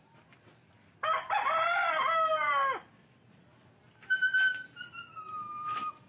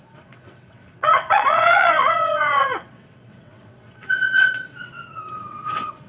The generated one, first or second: second